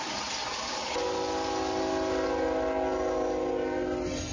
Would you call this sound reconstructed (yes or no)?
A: no